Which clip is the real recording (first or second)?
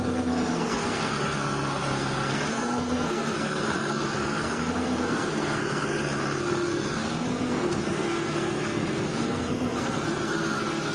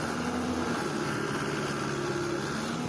second